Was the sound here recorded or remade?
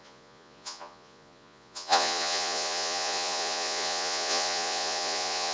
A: remade